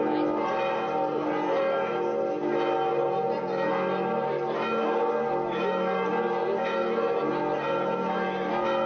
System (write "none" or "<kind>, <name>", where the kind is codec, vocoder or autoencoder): none